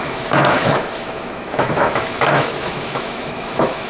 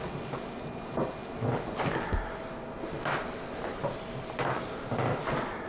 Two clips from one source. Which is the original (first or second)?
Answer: second